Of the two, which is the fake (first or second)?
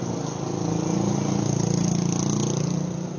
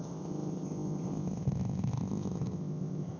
second